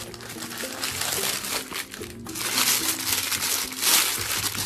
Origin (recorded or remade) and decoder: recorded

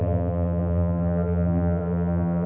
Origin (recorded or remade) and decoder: remade, vocoder, BigVGAN v2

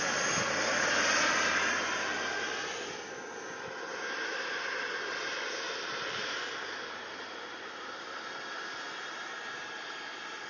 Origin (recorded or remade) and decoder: recorded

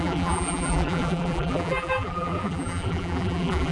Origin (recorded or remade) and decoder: remade, vocoder, BigVGAN v2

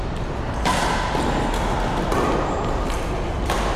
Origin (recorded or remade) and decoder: recorded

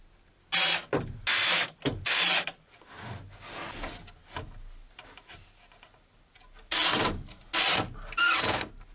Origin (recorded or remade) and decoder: recorded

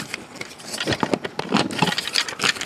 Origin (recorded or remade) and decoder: recorded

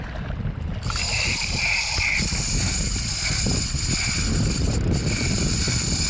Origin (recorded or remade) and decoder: recorded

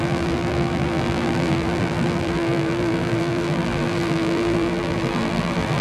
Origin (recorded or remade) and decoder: remade, vocoder, BigVGAN v2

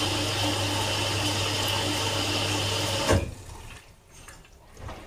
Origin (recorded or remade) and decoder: recorded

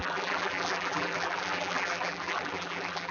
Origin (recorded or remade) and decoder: remade, vocoder, BigVGAN v2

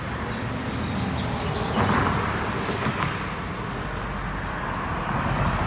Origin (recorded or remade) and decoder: recorded